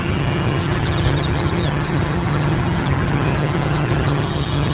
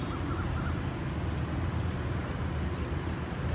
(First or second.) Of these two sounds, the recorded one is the second